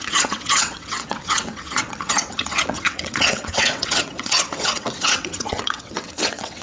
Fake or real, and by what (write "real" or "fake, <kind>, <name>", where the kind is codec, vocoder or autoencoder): fake, vocoder, WaveNeXt